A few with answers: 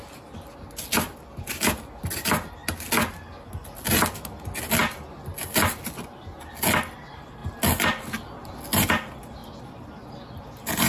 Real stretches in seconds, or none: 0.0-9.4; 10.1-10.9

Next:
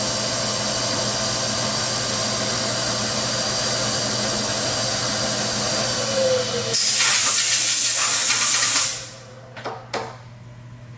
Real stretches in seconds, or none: 0.0-2.8; 3.3-11.0